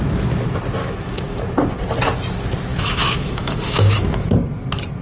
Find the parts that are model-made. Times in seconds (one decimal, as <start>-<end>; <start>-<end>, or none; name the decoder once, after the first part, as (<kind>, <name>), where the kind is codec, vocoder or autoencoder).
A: 0.8-1.4 (autoencoder, DAC-VAE); 2.7-4.3